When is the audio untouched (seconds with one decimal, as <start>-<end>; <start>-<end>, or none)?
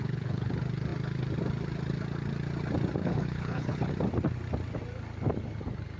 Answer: 0.5-3.0; 3.9-6.0